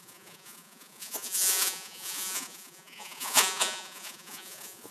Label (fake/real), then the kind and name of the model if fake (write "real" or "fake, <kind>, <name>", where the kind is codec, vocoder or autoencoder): fake, vocoder, Vocos